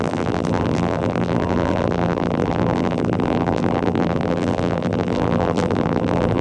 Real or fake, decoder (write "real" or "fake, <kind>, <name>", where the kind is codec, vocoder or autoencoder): fake, vocoder, BigVGAN v2